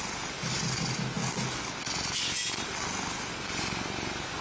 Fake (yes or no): no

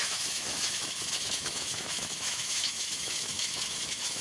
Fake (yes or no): yes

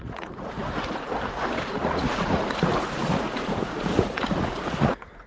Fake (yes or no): yes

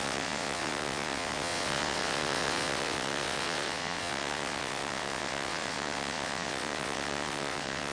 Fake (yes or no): yes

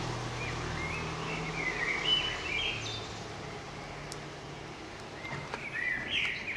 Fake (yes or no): no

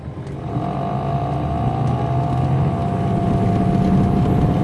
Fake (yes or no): no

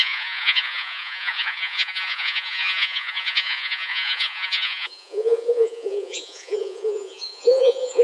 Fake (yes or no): yes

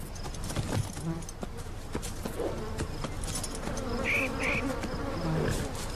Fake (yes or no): no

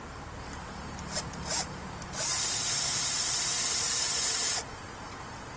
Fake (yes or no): yes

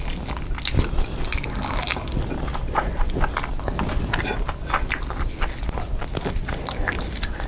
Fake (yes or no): no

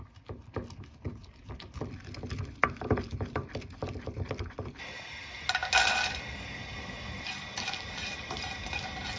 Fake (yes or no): no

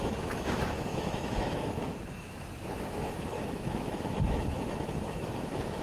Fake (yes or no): yes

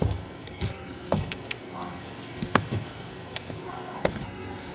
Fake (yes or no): yes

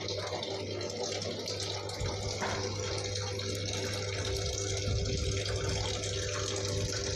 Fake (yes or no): no